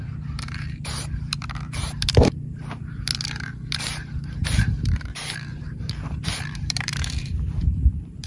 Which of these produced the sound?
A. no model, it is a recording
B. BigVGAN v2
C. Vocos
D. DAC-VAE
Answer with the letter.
B